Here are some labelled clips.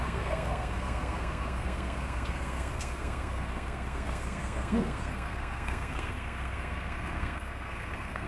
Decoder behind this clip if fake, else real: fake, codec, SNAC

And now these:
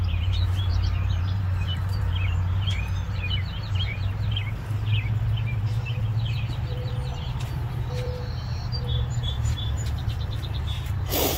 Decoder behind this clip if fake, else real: fake, vocoder, BigVGAN v2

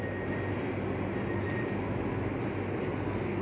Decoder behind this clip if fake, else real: real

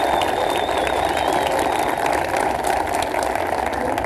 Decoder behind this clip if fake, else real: real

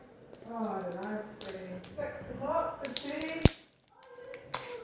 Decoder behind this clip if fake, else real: real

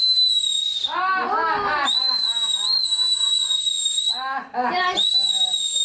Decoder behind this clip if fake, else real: real